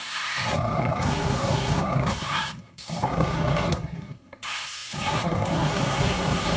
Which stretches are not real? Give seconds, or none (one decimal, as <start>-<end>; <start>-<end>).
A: 0.0-6.6